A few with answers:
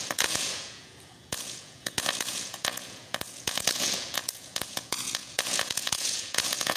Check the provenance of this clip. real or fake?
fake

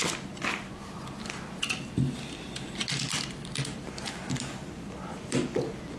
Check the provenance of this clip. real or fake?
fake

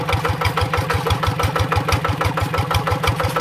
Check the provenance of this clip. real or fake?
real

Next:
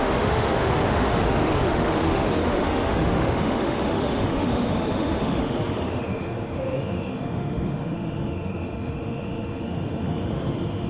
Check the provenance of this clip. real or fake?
fake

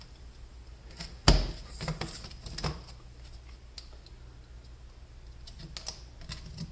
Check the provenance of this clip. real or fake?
real